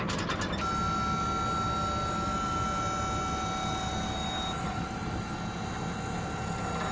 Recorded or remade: recorded